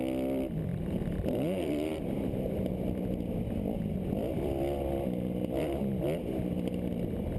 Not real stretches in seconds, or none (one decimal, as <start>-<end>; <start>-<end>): 0.7-2.7